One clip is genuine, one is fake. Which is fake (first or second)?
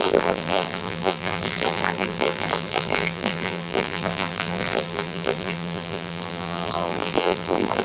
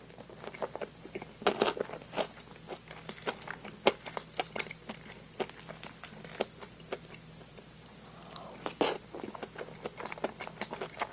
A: first